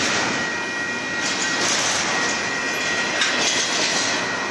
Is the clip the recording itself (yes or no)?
yes